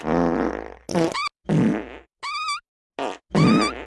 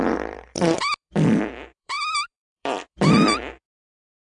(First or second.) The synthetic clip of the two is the second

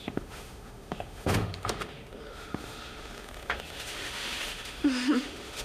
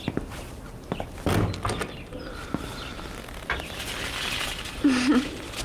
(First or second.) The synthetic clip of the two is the first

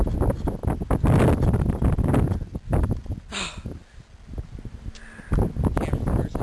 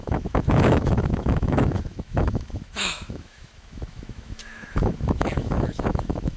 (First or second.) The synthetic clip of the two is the second